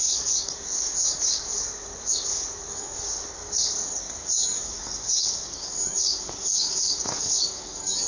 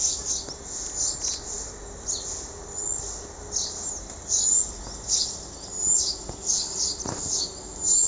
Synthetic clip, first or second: first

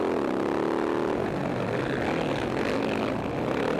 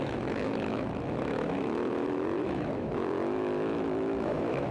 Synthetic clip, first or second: second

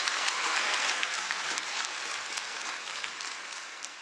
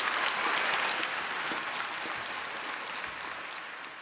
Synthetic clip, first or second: first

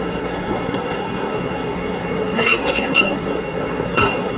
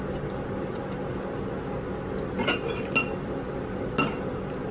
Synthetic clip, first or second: first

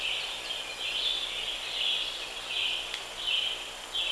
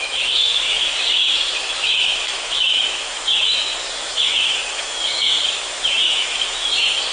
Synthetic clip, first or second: second